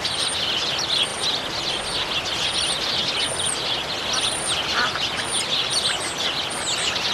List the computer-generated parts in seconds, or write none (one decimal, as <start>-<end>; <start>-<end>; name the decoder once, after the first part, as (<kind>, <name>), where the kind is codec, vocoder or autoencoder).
none